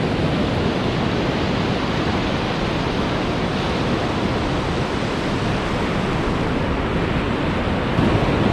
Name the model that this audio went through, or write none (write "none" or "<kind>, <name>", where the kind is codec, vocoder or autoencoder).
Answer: none